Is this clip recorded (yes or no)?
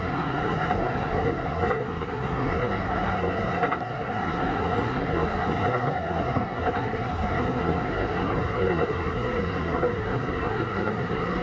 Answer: no